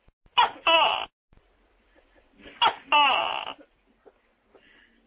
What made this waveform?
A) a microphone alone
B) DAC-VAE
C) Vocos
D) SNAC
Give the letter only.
A